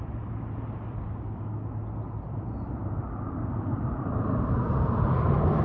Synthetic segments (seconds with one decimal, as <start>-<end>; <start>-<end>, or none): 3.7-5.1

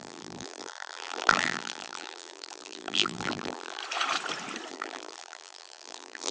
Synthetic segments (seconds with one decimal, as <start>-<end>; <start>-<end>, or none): 0.0-3.8; 4.7-6.3

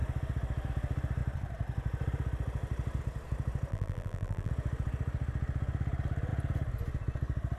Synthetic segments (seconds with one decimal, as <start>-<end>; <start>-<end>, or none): 3.7-4.5